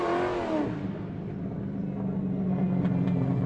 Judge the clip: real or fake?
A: real